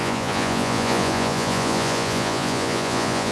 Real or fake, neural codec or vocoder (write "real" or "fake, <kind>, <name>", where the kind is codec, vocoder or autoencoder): fake, vocoder, Vocos